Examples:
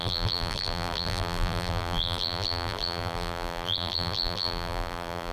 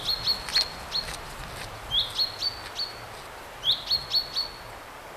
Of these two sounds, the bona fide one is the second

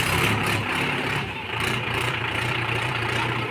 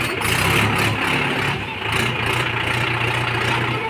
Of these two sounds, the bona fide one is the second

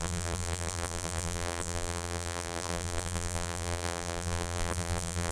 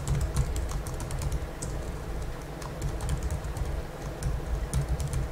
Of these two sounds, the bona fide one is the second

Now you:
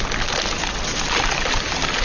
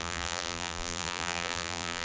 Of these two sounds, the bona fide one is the first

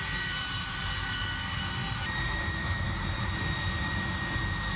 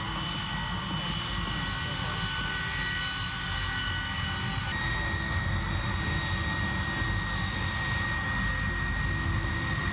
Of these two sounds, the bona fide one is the second